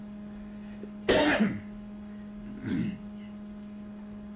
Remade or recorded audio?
recorded